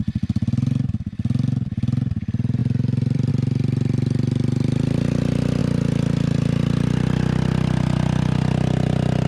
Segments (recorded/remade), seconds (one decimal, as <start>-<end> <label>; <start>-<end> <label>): 0.0-2.6 recorded; 2.6-3.3 remade; 3.3-9.3 recorded